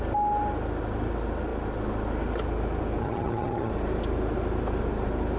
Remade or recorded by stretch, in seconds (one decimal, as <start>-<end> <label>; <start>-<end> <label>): 0.0-3.0 recorded; 3.0-3.7 remade; 3.7-5.4 recorded